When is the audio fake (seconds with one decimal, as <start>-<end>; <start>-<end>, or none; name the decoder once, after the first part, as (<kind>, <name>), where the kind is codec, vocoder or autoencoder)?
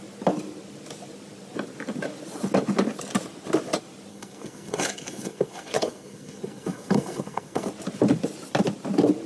4.1-7.7 (codec, SNAC)